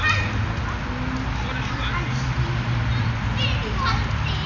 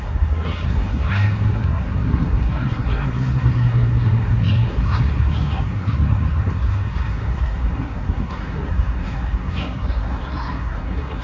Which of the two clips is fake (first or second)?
second